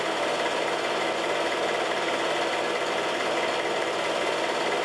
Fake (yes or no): no